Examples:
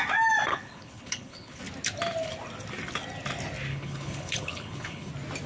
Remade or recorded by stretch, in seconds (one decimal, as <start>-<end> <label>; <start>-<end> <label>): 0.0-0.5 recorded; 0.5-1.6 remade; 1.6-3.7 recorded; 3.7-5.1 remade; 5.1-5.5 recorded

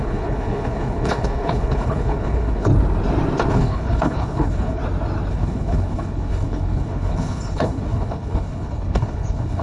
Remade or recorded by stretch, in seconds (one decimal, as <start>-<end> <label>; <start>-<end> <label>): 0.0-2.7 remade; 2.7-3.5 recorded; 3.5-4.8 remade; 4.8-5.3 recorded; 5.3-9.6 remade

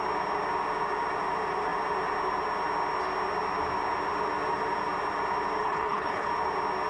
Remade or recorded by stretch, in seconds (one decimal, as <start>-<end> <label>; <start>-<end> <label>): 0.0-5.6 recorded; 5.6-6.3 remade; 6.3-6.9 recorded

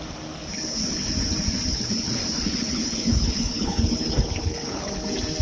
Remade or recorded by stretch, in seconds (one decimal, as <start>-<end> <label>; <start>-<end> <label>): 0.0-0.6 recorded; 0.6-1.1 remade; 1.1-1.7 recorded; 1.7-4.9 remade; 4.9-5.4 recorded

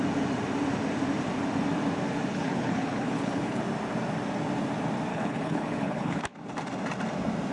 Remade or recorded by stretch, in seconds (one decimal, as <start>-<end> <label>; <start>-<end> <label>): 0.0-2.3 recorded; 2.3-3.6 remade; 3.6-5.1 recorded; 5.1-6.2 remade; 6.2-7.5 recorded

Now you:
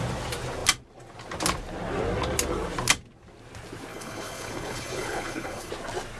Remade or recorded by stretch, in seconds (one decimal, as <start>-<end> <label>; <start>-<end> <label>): 0.0-3.9 recorded; 3.9-5.7 remade; 5.7-6.2 recorded